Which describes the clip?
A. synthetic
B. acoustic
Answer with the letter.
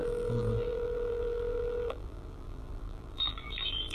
A